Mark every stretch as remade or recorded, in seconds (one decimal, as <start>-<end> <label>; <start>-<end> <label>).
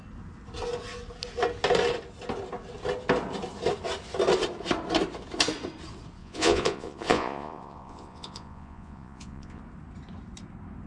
0.0-6.2 recorded; 6.2-9.6 remade; 9.6-10.9 recorded